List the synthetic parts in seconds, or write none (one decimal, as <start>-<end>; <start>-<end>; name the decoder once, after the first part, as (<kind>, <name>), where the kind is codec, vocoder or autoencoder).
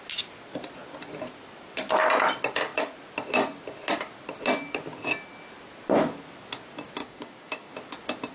7.0-7.7 (codec, DAC)